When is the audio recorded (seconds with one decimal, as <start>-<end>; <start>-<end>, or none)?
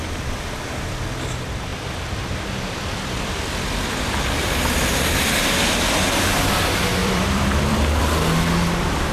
0.0-1.7; 4.6-7.0; 8.0-9.1